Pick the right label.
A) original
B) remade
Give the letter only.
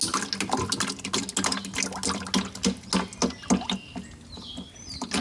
A